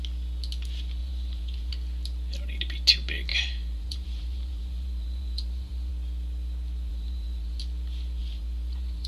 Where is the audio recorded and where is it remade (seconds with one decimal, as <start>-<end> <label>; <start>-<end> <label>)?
0.0-1.0 recorded; 1.0-1.7 remade; 1.7-3.3 recorded; 3.3-5.9 remade; 5.9-6.9 recorded; 6.9-7.6 remade; 7.6-8.2 recorded; 8.2-9.1 remade